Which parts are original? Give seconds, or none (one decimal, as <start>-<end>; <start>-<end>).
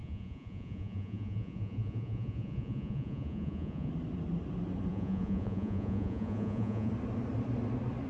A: 3.9-4.9; 6.9-8.1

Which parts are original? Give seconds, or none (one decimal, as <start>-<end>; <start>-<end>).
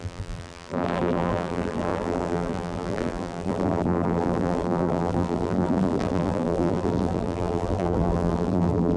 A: none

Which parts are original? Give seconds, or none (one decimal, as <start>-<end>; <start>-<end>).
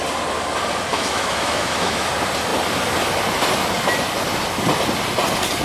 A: 0.0-0.9; 2.1-5.6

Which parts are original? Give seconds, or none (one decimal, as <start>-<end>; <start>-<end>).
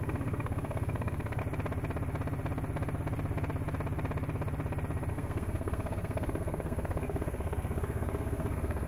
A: 1.4-5.1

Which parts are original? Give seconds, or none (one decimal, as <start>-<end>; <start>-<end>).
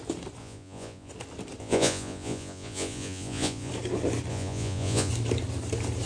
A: 0.0-0.4; 1.1-1.6; 3.7-4.3; 5.1-6.1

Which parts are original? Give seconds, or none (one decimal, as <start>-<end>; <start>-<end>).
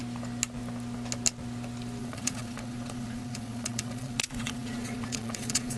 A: 0.0-2.0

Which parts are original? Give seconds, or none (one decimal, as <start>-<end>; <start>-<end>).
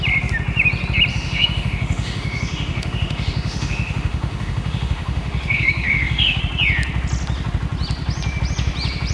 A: 0.0-1.1; 6.4-9.1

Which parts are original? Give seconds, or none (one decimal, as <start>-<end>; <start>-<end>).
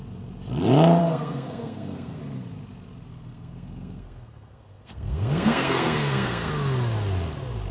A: 0.0-1.0; 2.2-3.1; 6.5-7.7